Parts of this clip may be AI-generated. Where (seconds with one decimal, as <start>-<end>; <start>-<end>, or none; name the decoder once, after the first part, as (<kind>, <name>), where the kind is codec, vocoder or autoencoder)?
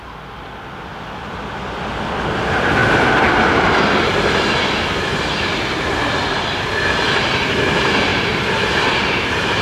8.1-9.6 (vocoder, BigVGAN v2)